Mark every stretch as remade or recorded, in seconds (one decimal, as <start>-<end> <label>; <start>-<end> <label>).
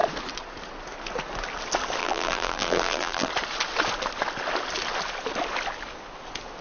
0.0-2.0 recorded; 2.0-3.3 remade; 3.3-6.6 recorded